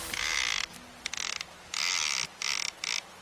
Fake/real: real